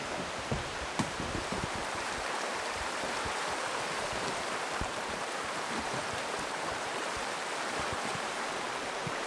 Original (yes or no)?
no